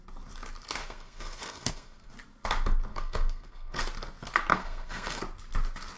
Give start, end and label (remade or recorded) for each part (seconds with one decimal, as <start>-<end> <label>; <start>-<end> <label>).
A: 0.0-0.8 recorded; 0.8-2.1 remade; 2.1-2.9 recorded; 2.9-3.8 remade; 3.8-4.5 recorded; 4.5-5.2 remade; 5.2-6.0 recorded

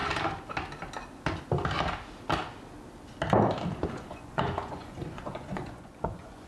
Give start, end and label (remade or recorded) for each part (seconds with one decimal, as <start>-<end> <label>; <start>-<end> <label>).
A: 0.0-3.9 recorded; 3.9-6.5 remade

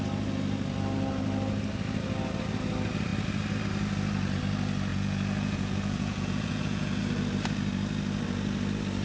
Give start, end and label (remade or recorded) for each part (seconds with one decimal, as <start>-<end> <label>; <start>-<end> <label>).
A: 0.0-4.9 recorded; 4.9-7.0 remade; 7.0-9.0 recorded

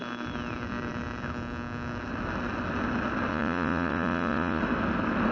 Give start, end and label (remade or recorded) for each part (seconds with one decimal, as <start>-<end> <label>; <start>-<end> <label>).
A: 0.0-3.3 recorded; 3.3-4.6 remade; 4.6-5.3 recorded

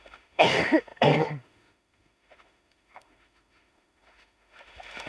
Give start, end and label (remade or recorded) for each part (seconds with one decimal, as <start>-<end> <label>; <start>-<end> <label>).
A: 0.0-5.1 remade

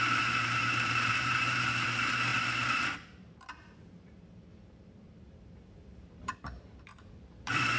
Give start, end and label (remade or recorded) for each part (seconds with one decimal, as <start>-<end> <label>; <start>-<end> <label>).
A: 0.0-7.8 remade

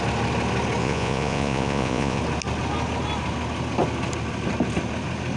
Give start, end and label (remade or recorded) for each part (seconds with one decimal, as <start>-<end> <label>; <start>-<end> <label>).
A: 0.0-0.8 recorded; 0.8-2.2 remade; 2.2-5.4 recorded

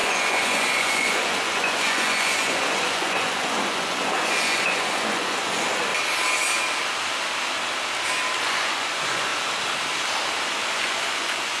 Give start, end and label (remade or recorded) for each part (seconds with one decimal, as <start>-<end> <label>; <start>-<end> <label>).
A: 0.0-5.9 remade; 5.9-8.4 recorded; 8.4-9.3 remade; 9.3-10.7 recorded; 10.7-11.6 remade